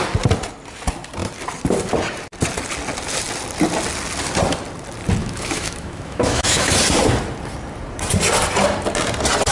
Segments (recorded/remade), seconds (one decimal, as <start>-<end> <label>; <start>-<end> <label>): 0.0-5.2 recorded; 5.2-6.7 remade; 6.7-9.5 recorded